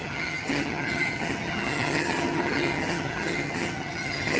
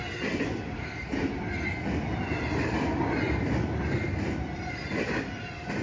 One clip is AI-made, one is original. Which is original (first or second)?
second